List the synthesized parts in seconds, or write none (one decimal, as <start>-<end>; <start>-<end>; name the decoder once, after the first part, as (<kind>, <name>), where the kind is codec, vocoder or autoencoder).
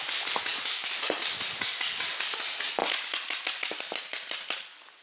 none